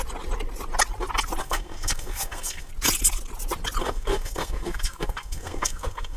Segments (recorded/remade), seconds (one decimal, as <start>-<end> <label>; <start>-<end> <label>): 0.0-1.4 recorded; 1.4-2.7 remade; 2.7-3.8 recorded; 3.8-6.2 remade